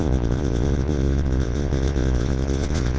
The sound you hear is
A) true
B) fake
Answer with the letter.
B